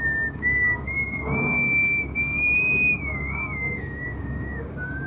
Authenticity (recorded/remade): remade